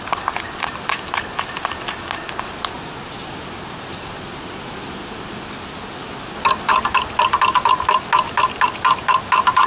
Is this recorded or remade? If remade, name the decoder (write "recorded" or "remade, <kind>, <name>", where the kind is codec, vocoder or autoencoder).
recorded